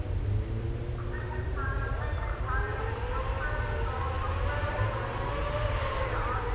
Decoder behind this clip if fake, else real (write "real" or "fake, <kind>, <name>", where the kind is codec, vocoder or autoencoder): real